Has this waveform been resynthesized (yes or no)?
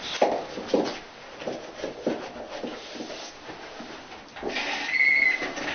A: no